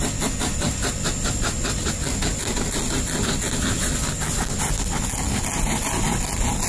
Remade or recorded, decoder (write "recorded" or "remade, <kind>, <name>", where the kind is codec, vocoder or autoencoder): recorded